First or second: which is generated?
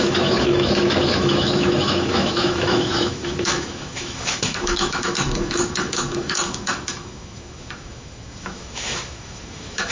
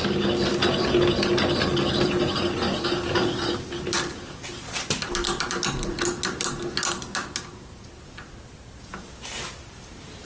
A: first